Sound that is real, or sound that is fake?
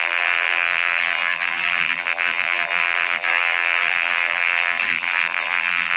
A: fake